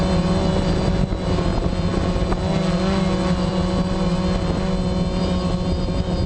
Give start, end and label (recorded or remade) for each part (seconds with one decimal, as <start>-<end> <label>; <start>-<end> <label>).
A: 0.0-6.3 recorded